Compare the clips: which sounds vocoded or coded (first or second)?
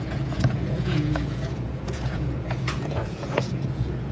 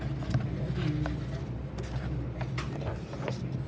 first